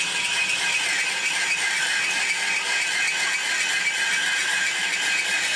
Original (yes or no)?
yes